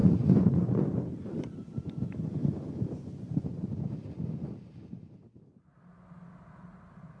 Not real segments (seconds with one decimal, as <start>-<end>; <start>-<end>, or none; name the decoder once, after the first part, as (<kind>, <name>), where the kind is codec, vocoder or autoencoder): 0.0-0.8 (vocoder, Vocos)